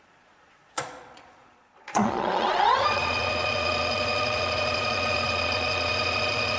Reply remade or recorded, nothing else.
remade